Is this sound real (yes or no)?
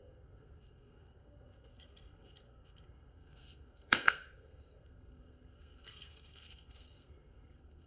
no